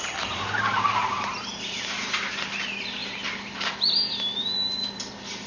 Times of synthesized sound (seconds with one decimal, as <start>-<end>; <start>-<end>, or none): none